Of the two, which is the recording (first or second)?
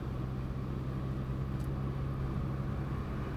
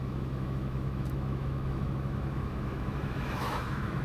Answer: first